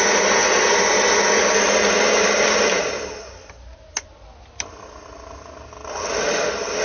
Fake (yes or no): no